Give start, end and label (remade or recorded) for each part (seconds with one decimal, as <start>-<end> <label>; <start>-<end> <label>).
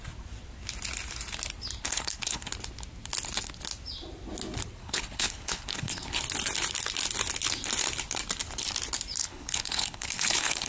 0.0-1.8 recorded; 1.8-2.5 remade; 2.5-4.8 recorded; 4.8-6.2 remade; 6.2-9.2 recorded; 9.2-10.7 remade